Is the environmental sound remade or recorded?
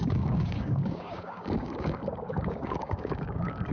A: remade